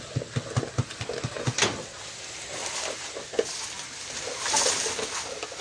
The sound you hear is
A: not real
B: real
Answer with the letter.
B